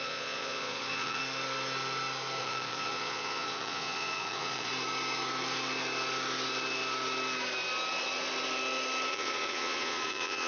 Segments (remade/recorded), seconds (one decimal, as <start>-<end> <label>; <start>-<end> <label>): 0.0-1.2 remade; 1.2-2.4 recorded; 2.4-4.7 remade; 4.7-9.1 recorded; 9.1-10.5 remade